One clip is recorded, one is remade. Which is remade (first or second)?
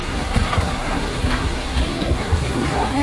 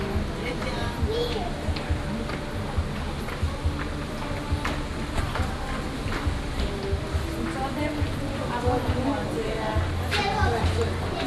first